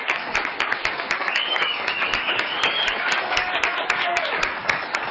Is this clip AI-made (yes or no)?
yes